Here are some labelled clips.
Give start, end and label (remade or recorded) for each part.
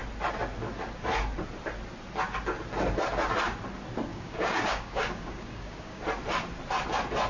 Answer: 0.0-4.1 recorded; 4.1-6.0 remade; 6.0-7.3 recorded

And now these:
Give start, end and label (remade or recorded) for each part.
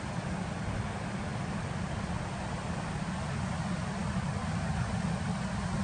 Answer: 0.0-5.8 recorded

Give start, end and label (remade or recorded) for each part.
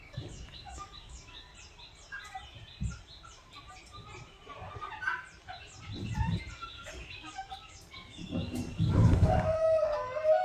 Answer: 0.0-1.5 remade; 1.5-6.5 recorded; 6.5-10.4 remade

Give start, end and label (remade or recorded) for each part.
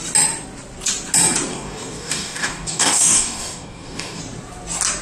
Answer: 0.0-1.5 recorded; 1.5-4.2 remade; 4.2-5.0 recorded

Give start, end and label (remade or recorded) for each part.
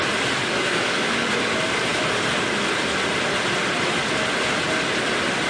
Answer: 0.0-0.4 recorded; 0.4-1.3 remade; 1.3-5.5 recorded